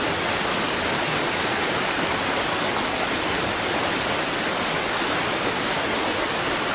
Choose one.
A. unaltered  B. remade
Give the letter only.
A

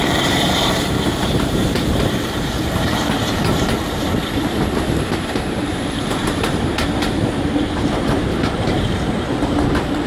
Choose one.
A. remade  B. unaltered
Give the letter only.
A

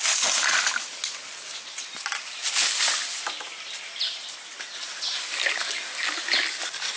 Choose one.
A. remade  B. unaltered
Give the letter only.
B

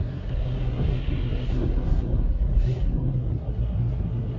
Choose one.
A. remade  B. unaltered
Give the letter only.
A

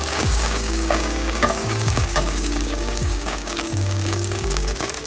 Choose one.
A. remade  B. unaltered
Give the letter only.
A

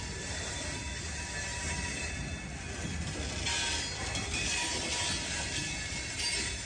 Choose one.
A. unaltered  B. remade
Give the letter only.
A